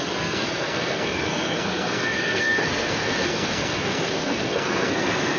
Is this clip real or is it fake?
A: fake